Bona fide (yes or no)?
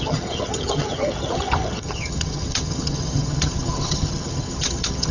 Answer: no